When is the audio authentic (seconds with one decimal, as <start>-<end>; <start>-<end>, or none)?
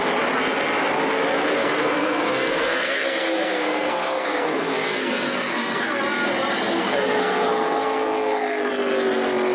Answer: 0.0-1.6; 6.0-6.8; 8.7-9.5